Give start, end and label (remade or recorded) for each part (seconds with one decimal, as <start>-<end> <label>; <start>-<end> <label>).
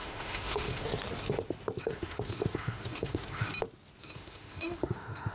0.0-0.9 remade; 0.9-1.8 recorded; 1.8-3.5 remade; 3.5-4.0 recorded; 4.0-5.3 remade